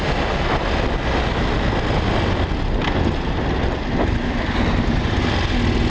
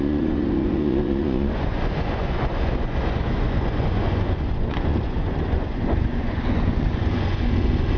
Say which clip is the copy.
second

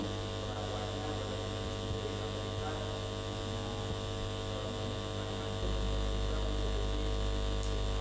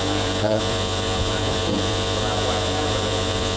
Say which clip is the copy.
second